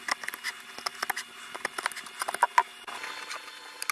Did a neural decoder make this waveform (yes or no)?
no